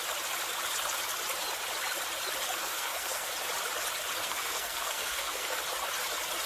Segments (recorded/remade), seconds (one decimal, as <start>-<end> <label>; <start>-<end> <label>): 0.0-2.6 recorded; 2.6-3.3 remade; 3.3-4.2 recorded; 4.2-5.6 remade; 5.6-6.5 recorded